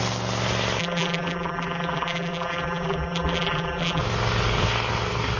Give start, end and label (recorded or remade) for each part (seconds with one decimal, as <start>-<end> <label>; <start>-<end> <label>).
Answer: 0.0-0.8 recorded; 0.8-4.0 remade; 4.0-5.4 recorded

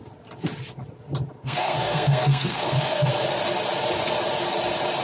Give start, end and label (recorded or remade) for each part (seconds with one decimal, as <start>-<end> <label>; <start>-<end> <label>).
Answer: 0.0-1.4 recorded; 1.4-3.1 remade; 3.1-5.0 recorded

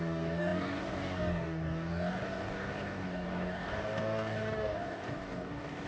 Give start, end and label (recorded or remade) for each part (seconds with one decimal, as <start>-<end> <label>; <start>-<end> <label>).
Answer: 0.0-5.9 remade